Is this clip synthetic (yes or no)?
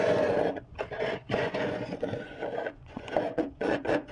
yes